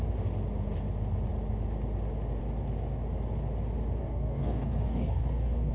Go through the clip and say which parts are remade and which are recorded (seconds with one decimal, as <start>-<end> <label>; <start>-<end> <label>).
0.0-4.0 recorded; 4.0-5.7 remade